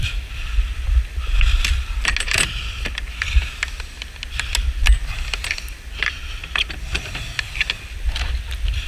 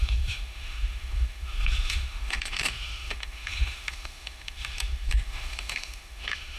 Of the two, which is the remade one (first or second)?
second